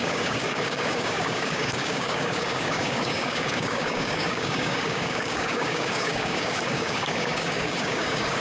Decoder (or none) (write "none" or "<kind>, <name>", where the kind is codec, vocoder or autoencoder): codec, DAC